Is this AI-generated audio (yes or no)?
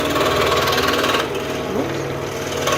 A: no